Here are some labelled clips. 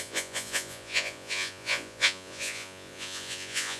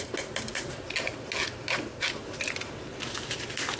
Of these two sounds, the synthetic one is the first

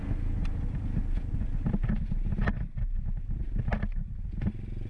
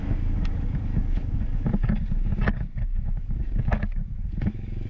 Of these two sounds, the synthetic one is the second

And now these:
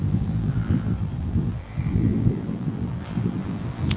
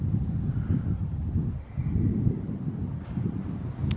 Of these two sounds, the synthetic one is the first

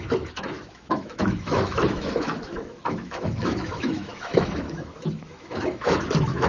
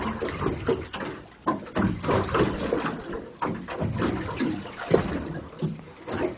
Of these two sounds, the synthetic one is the first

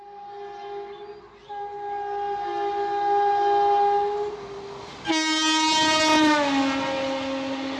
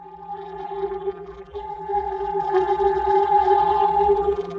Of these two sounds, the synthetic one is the second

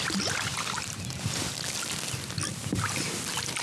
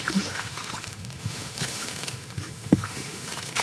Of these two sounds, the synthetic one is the second